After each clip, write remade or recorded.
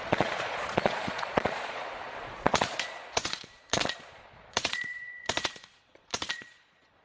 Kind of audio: remade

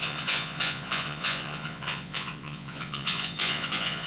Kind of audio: remade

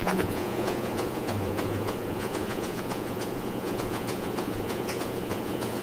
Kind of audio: remade